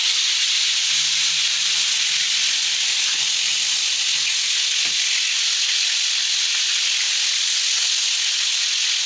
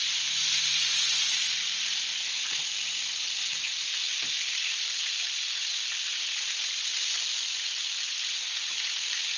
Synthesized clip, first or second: second